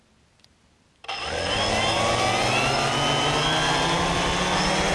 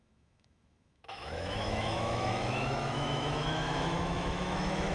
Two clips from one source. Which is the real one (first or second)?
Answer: first